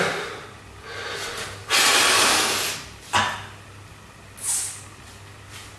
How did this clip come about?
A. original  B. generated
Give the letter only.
A